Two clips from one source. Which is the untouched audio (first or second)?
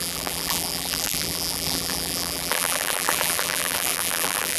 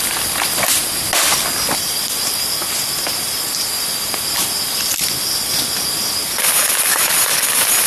second